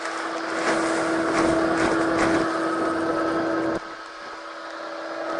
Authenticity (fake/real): real